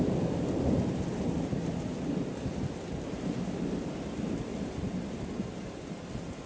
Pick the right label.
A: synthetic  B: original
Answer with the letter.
B